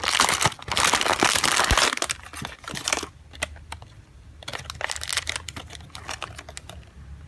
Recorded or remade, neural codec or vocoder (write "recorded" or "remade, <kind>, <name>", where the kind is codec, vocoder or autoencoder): recorded